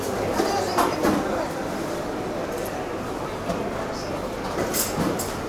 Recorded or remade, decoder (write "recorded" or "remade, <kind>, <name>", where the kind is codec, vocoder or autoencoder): recorded